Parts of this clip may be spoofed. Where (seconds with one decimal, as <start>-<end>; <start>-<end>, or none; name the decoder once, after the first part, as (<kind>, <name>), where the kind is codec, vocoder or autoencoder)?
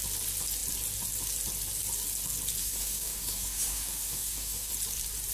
2.6-4.7 (codec, DAC)